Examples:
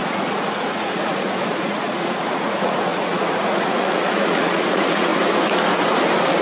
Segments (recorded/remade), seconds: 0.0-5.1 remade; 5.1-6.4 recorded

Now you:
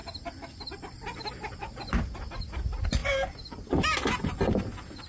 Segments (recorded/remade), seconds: 0.0-5.1 recorded

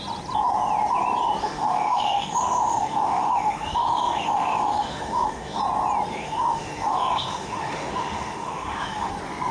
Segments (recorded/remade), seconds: 0.0-1.4 recorded; 1.4-5.6 remade; 5.6-6.1 recorded; 6.1-9.1 remade; 9.1-9.5 recorded

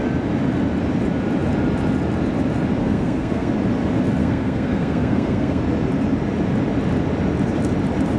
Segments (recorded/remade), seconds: 0.0-2.8 recorded; 2.8-3.5 remade; 3.5-4.2 recorded; 4.2-5.6 remade; 5.6-8.2 recorded

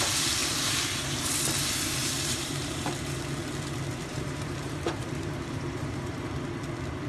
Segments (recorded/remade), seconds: 0.0-0.4 recorded; 0.4-1.3 remade; 1.3-2.0 recorded; 2.0-2.9 remade; 2.9-4.1 recorded; 4.1-6.3 remade; 6.3-7.1 recorded

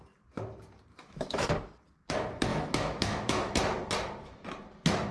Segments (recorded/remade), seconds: 0.0-0.9 recorded; 0.9-1.5 remade; 1.5-2.5 recorded; 2.5-3.6 remade; 3.6-5.1 recorded

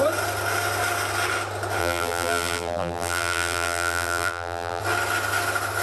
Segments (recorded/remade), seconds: 0.0-1.8 recorded; 1.8-4.8 remade; 4.8-5.8 recorded

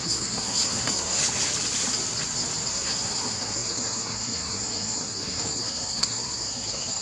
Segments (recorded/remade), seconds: 0.0-1.2 remade; 1.2-2.7 recorded; 2.7-7.0 remade